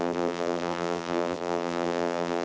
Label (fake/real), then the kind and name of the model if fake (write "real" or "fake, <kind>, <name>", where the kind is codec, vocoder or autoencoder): fake, vocoder, BigVGAN v2